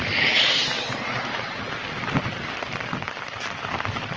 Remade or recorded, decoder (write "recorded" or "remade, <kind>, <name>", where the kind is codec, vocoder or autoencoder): recorded